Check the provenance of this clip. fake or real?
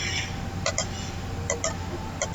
real